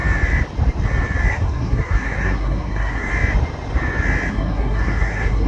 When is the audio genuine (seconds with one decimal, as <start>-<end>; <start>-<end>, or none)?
0.0-1.3; 3.1-4.3